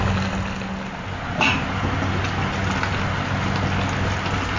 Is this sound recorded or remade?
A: recorded